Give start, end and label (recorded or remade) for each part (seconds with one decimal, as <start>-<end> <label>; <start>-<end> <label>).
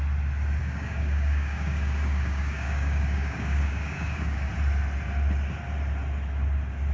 0.0-0.6 recorded; 0.6-4.5 remade; 4.5-6.9 recorded